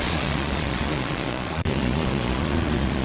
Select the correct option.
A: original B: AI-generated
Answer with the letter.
B